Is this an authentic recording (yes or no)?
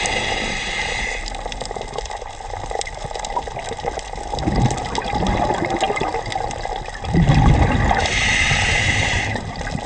yes